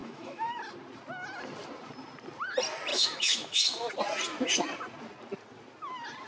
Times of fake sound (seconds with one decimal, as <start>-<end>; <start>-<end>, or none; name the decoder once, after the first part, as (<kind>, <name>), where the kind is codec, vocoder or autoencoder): 0.0-0.6 (autoencoder, DAC-VAE); 2.9-3.9